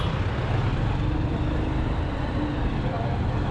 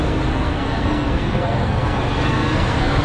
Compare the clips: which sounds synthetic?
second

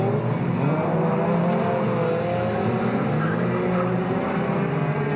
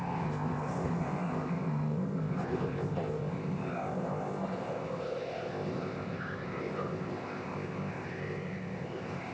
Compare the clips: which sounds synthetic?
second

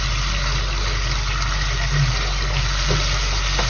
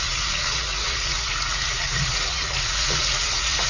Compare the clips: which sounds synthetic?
second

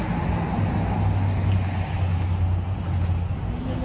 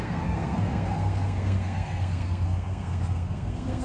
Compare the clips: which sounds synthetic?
second